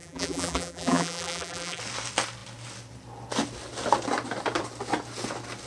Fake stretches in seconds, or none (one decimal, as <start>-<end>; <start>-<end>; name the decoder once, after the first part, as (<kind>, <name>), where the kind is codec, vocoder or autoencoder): 0.0-1.8 (vocoder, BigVGAN v2)